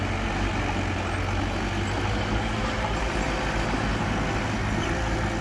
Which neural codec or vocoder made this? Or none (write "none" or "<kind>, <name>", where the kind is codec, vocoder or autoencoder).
none